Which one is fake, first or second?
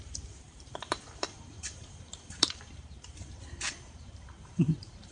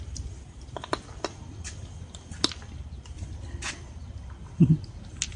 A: first